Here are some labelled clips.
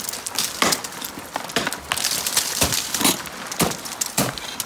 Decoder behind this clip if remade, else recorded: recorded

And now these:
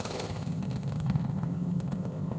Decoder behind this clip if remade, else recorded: remade, codec, ZipCodec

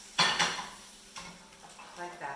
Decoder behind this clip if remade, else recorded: remade, vocoder, BigVGAN v2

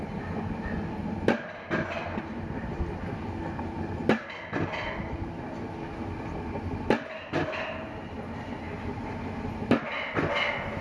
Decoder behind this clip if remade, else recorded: recorded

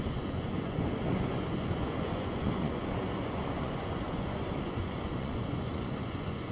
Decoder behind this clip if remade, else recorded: remade, vocoder, Vocos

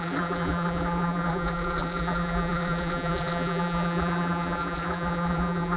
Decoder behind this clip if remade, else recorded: remade, vocoder, BigVGAN v2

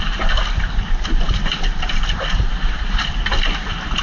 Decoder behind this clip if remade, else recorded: recorded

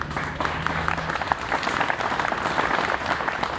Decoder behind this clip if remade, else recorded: recorded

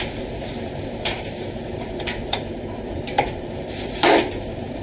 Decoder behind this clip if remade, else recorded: remade, vocoder, BigVGAN v2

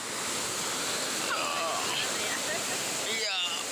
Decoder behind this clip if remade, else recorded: recorded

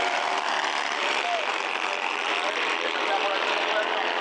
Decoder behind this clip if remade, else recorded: remade, vocoder, BigVGAN v2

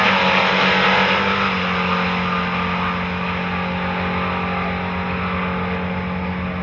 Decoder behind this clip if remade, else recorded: recorded